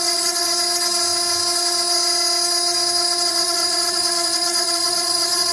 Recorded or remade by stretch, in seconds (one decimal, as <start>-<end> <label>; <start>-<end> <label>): 0.0-0.5 remade; 0.5-3.3 recorded; 3.3-5.5 remade